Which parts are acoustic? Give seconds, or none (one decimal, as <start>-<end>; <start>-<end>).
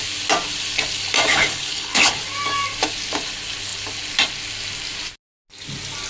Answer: 0.0-1.3; 2.2-6.1